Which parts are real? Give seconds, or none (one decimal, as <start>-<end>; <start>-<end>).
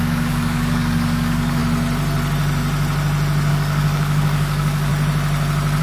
1.6-3.5; 4.9-5.8